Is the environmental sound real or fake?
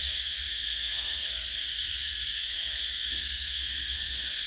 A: fake